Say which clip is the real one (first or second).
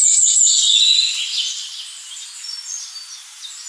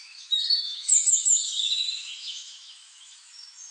first